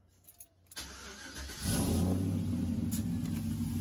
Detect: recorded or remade recorded